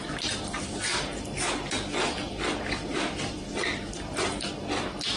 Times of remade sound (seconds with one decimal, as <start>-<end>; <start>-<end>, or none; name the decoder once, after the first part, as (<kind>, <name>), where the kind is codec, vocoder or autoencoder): 0.0-1.1 (vocoder, BigVGAN v2); 2.4-4.3